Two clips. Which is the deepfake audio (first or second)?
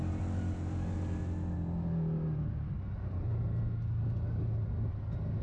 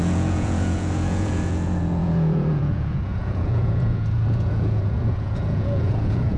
second